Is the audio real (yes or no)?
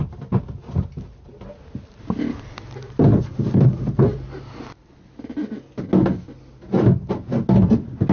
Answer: yes